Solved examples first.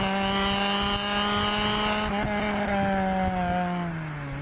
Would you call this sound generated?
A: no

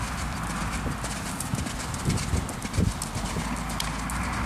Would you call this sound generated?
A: no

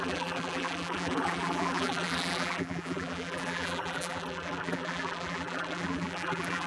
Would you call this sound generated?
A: yes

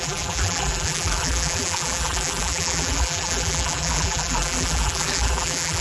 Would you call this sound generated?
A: yes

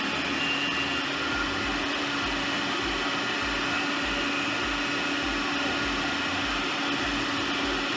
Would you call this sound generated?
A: no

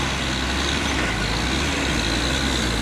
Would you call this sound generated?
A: no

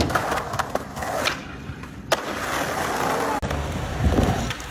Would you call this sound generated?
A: no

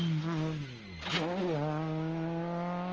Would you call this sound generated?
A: no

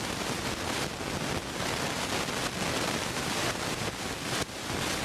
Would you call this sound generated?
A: no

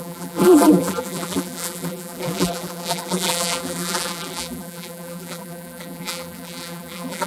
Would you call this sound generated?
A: yes